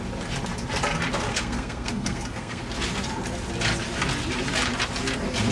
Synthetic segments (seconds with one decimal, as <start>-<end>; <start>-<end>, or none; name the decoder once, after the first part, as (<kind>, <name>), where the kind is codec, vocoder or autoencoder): 1.3-2.6 (codec, SNAC)